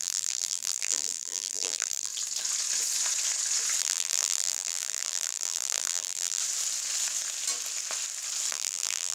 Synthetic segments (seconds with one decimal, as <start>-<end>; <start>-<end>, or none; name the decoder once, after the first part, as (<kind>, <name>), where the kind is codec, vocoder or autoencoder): 0.0-2.1 (vocoder, BigVGAN v2); 3.8-6.4; 8.5-9.1